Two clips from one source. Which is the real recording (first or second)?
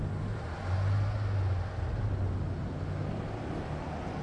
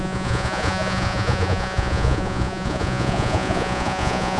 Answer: first